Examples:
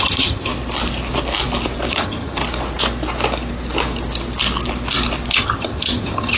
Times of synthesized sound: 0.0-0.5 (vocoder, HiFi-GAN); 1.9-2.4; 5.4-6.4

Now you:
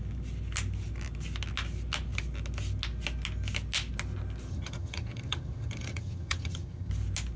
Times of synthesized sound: 4.5-6.9 (vocoder, HiFi-GAN)

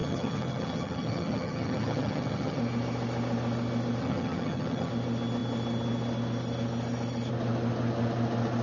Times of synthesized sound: 0.0-2.6 (vocoder, HiFi-GAN); 4.0-4.9

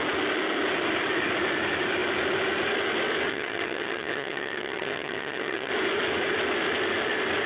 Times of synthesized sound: 3.3-5.7 (vocoder, HiFi-GAN)

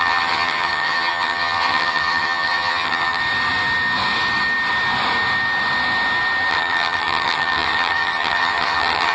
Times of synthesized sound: 0.0-3.2 (vocoder, HiFi-GAN); 6.5-9.1

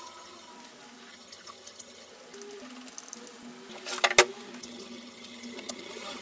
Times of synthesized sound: 0.0-0.5 (vocoder, HiFi-GAN); 1.1-2.1; 4.6-6.2

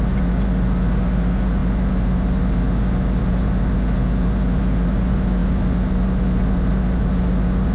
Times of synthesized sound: none